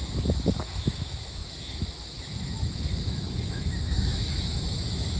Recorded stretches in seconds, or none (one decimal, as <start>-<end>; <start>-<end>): none